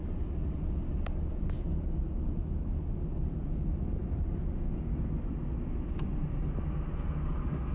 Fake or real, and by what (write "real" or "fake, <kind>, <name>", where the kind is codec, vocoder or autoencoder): real